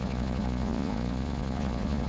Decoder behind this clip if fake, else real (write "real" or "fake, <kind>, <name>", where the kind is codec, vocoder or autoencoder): fake, vocoder, Vocos